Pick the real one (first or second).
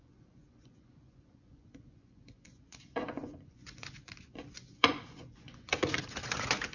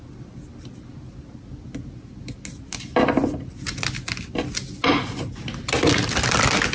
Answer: second